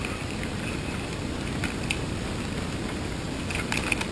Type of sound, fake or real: real